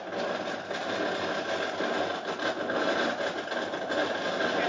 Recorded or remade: recorded